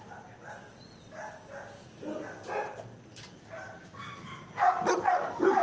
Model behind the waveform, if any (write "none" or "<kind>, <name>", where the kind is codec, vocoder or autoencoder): none